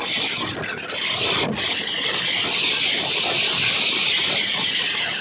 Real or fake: real